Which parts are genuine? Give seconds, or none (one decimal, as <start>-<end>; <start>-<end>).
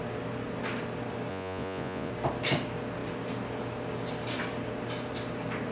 0.0-1.3; 2.1-5.7